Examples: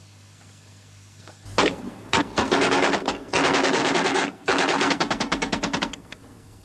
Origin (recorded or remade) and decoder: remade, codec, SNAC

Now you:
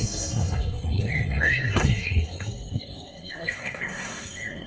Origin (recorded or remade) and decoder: remade, codec, SNAC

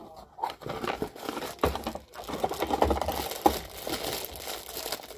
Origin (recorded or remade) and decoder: recorded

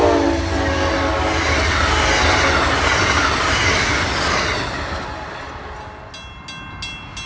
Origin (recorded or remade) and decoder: recorded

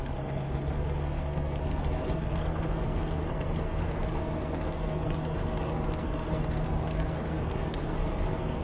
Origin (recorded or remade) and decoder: remade, codec, SNAC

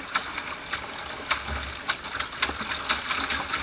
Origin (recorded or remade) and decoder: recorded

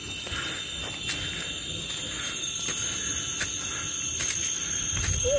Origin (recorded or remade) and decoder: recorded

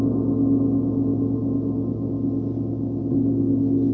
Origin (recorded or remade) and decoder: recorded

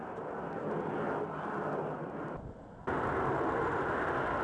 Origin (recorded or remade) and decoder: recorded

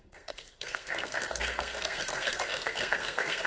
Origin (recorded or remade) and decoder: remade, codec, SNAC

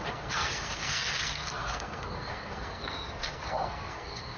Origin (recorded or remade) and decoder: remade, codec, SNAC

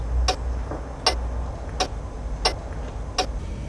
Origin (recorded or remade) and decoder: recorded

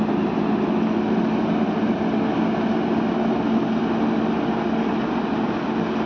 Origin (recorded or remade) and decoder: recorded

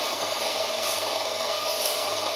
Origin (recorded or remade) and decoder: remade, codec, SNAC